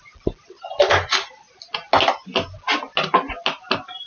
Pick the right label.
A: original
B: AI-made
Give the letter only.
A